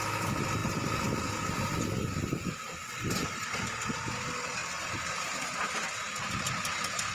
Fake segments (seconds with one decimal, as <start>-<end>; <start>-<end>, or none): none